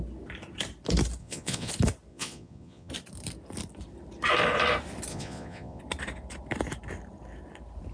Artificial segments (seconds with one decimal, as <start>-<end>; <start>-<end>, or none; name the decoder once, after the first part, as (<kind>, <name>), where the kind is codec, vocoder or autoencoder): 1.2-1.7 (vocoder, Vocos); 2.1-2.9; 5.1-5.8